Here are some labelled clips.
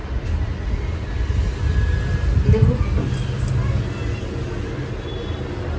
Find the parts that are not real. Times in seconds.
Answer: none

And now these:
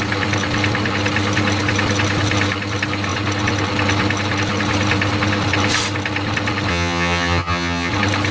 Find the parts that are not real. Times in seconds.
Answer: 6.7-7.9 (vocoder, HiFi-GAN)

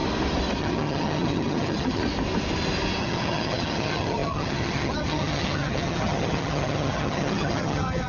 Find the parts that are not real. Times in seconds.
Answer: 0.6-2.0 (vocoder, HiFi-GAN); 3.0-8.1

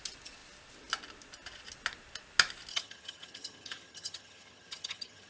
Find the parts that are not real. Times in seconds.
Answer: 2.7-5.3 (vocoder, HiFi-GAN)

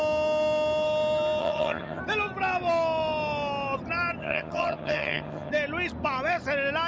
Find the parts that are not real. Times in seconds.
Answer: 1.4-2.0 (vocoder, HiFi-GAN); 4.2-5.5